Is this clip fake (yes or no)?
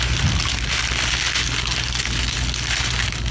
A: no